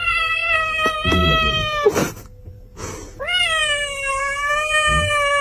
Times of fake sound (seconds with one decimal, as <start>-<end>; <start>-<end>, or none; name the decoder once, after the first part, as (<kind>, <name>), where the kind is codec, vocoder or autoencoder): none